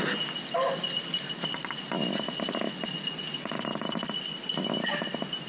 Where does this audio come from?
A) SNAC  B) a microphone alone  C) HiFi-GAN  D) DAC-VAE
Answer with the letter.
B